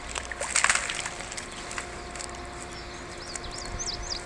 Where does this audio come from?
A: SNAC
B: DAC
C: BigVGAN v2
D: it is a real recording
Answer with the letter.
D